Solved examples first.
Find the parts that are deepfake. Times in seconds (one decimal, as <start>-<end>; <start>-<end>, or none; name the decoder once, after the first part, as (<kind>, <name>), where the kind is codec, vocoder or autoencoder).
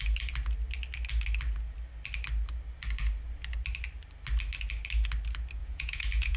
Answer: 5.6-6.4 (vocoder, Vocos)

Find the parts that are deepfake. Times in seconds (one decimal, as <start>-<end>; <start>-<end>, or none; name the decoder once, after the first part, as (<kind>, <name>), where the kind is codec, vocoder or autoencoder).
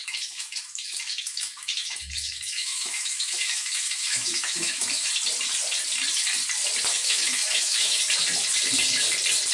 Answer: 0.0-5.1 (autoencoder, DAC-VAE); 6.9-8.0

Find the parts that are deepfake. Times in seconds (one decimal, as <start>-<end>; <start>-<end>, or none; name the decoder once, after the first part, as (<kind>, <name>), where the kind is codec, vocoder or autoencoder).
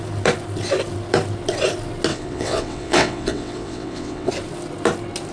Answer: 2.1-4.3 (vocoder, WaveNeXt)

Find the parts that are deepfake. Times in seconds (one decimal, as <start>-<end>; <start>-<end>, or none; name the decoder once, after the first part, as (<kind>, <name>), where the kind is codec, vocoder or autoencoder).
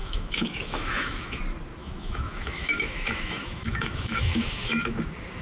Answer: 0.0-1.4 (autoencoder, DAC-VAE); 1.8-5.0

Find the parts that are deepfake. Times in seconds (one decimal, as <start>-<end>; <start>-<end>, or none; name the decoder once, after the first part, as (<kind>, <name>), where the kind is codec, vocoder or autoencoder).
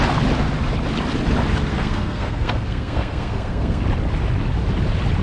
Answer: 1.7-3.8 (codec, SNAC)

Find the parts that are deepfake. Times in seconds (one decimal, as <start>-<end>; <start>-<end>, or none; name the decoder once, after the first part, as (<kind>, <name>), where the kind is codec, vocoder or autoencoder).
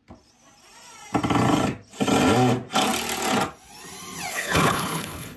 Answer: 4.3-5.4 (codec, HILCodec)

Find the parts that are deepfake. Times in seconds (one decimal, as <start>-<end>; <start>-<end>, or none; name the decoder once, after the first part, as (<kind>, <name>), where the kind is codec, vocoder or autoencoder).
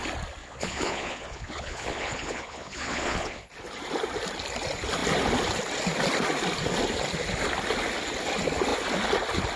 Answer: 0.4-3.5 (vocoder, Vocos)